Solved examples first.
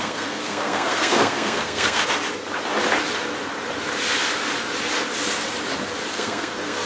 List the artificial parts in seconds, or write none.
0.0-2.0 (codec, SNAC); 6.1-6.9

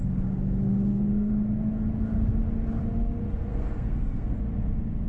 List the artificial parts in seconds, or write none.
0.7-1.3 (codec, SNAC); 3.5-4.4

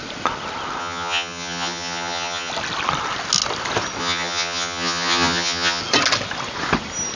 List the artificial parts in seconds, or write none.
0.8-2.5 (vocoder, HiFi-GAN); 4.0-5.8

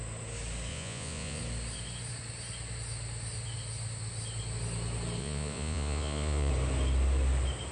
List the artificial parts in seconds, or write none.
0.7-1.4 (vocoder, Vocos); 5.2-6.5

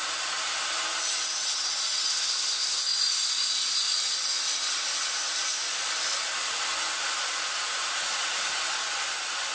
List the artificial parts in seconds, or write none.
2.1-2.8 (codec, SNAC)

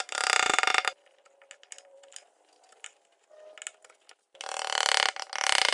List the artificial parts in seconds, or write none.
none

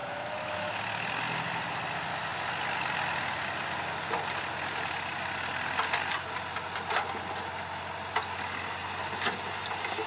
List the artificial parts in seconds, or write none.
0.0-0.8 (autoencoder, DAC-VAE)